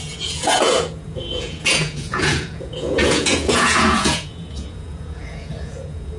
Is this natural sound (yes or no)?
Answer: no